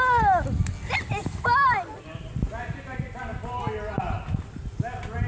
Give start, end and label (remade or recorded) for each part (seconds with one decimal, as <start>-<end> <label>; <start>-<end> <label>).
0.0-5.3 recorded